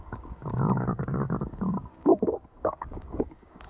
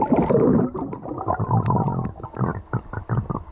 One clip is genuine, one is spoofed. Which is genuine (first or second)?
second